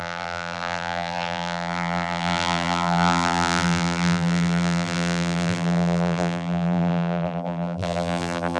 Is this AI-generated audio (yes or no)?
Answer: yes